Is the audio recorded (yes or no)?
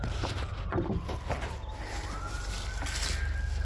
yes